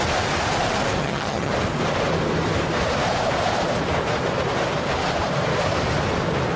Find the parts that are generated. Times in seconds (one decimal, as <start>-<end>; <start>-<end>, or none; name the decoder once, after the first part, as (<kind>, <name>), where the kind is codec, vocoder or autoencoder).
1.0-1.5 (vocoder, HiFi-GAN)